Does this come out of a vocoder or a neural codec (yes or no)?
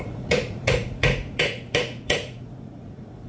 yes